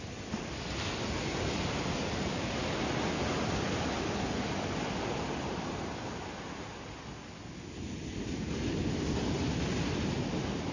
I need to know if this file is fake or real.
real